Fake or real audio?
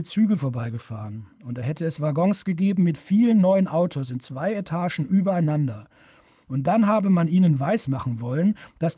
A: fake